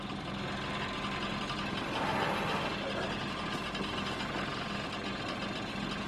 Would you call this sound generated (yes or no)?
no